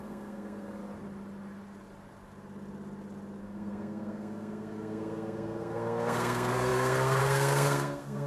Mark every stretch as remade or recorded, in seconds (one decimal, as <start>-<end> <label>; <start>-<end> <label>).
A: 0.0-0.8 remade; 0.8-3.4 recorded; 3.4-8.3 remade